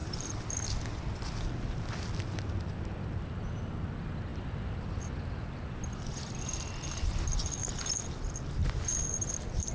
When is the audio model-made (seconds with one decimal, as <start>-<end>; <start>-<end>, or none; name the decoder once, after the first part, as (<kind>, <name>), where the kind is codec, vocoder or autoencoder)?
0.0-1.3 (vocoder, BigVGAN v2); 8.6-9.7